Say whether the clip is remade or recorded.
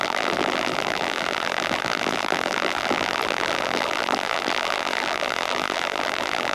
remade